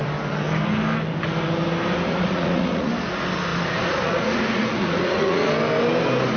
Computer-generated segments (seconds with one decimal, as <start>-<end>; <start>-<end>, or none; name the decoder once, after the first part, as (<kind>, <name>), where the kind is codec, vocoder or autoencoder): 2.1-2.9 (vocoder, Vocos); 3.5-5.5